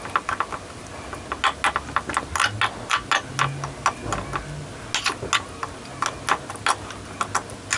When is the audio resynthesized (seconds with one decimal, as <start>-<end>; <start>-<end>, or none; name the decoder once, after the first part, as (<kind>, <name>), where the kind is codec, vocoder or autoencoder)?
none

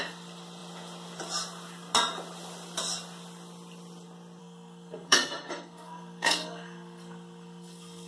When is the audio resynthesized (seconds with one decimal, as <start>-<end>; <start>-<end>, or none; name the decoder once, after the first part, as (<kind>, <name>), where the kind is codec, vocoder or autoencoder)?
4.4-8.1 (codec, SNAC)

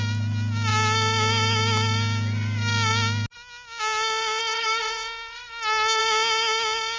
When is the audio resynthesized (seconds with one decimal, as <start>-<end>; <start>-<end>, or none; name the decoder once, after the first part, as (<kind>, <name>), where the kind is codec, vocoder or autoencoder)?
4.4-6.0 (autoencoder, DAC-VAE)